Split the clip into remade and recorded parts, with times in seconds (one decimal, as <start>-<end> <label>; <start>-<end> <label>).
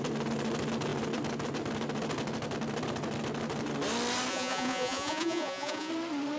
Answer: 0.0-4.3 recorded; 4.3-5.9 remade; 5.9-6.4 recorded